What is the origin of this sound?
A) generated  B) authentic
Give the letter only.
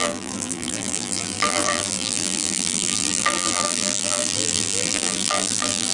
A